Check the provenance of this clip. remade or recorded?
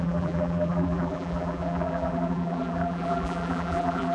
remade